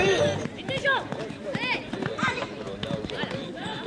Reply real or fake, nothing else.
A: real